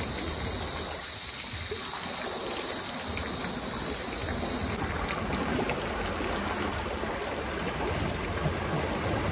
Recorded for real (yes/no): yes